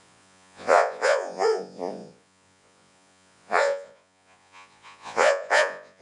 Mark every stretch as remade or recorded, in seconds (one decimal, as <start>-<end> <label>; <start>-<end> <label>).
0.0-6.0 remade